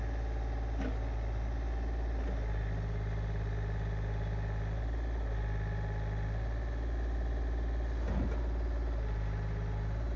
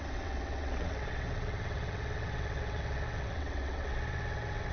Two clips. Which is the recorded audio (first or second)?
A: first